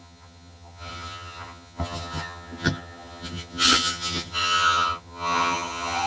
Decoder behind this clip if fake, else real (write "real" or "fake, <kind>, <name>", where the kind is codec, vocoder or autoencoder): fake, vocoder, HiFi-GAN